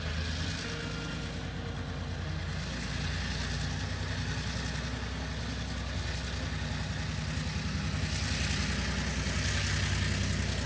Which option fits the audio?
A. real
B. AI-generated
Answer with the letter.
A